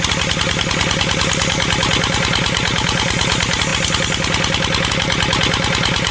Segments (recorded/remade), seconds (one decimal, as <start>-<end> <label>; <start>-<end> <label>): 0.0-6.1 recorded